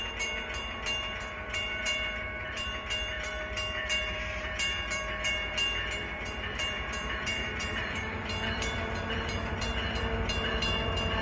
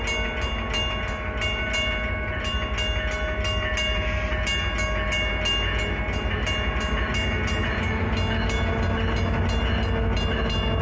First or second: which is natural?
second